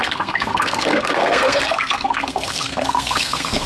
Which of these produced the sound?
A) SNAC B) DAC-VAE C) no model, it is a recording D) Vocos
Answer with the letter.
A